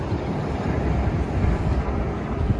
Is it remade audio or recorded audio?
recorded